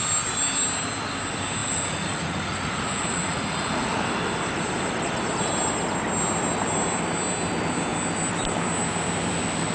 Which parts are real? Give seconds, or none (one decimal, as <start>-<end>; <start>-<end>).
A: 0.0-1.6; 4.0-9.7